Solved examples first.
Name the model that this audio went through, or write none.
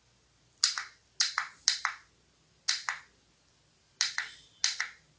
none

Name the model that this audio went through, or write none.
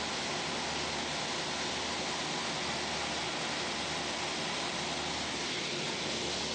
none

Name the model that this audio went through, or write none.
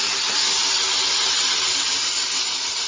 vocoder, BigVGAN v2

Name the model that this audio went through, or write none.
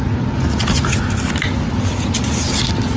none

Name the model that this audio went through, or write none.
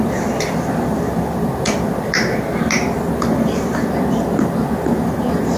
vocoder, BigVGAN v2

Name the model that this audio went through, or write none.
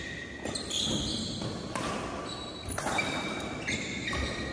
none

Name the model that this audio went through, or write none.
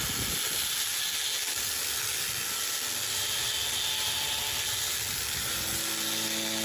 none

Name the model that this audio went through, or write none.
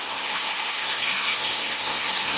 codec, SNAC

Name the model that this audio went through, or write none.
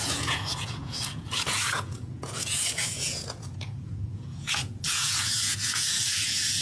vocoder, Vocos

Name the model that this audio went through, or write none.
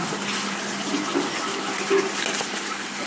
none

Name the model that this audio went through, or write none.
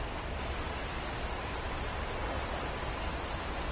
none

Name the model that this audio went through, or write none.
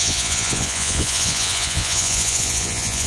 vocoder, Vocos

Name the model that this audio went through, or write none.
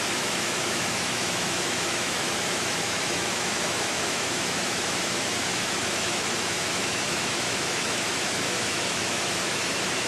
autoencoder, DAC-VAE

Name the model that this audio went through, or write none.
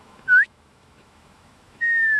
autoencoder, DAC-VAE